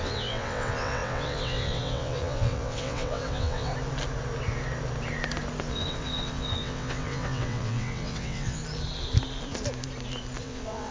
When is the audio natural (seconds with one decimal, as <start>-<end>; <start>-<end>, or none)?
3.7-5.7; 8.6-10.4